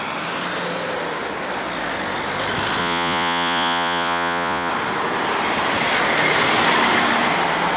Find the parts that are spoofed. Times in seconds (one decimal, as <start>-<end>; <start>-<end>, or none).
2.8-4.7